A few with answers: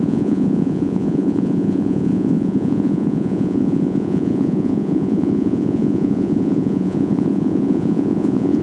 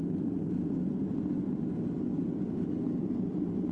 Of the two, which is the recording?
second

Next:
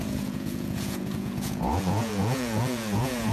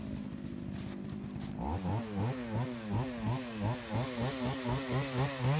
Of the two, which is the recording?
second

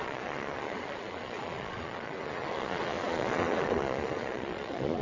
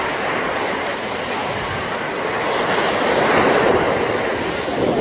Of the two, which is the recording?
second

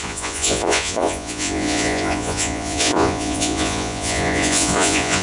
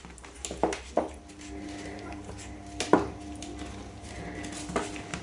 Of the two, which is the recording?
second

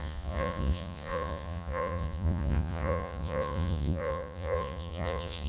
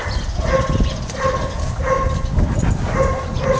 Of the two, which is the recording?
second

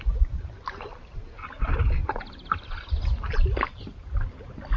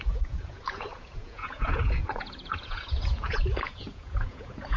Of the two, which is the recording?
first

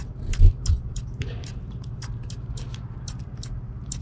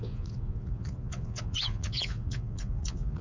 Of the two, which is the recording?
first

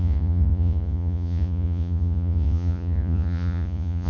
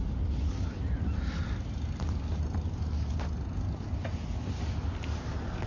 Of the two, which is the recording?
second